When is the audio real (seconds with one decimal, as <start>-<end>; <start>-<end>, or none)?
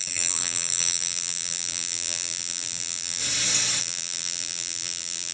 3.2-3.8